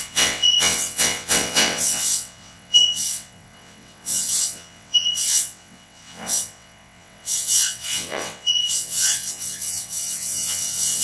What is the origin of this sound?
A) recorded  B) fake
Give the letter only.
B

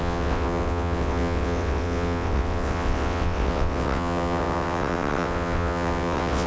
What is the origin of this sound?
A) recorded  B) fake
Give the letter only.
B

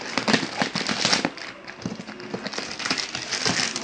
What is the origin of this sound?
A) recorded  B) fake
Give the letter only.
A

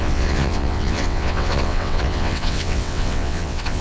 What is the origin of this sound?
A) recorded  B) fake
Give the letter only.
B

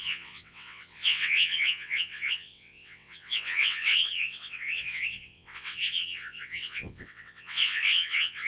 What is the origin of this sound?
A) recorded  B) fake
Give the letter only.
B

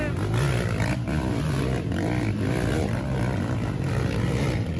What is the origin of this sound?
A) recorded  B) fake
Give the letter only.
A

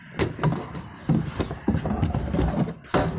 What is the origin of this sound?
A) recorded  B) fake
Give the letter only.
A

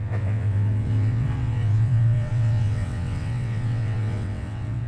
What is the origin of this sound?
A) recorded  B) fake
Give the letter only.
B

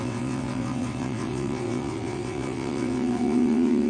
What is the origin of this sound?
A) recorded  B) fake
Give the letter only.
B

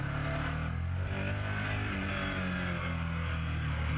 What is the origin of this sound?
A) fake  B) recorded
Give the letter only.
B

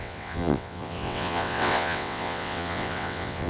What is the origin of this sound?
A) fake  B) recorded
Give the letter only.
A